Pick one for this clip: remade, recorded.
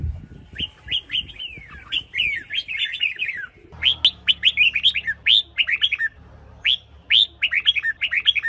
recorded